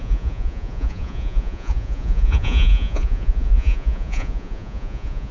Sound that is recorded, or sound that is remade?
remade